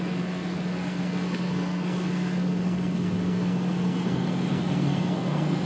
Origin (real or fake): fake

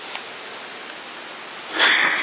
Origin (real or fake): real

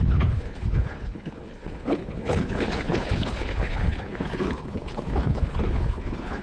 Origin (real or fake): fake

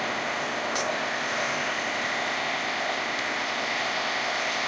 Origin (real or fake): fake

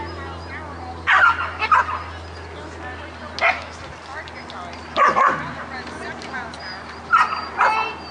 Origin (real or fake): real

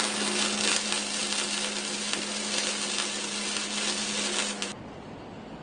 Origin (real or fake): real